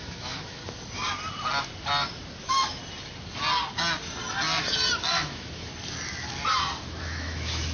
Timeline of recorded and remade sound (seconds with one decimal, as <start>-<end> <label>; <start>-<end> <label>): 0.0-0.6 remade; 0.6-2.4 recorded; 2.4-2.8 remade; 2.8-5.1 recorded; 5.1-5.7 remade; 5.7-7.0 recorded; 7.0-7.7 remade